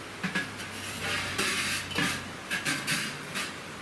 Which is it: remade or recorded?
remade